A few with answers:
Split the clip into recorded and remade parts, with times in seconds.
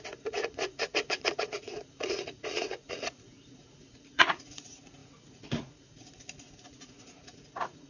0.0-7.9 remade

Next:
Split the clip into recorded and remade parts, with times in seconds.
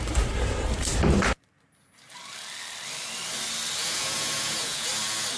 0.0-3.8 recorded; 3.8-4.9 remade; 4.9-5.4 recorded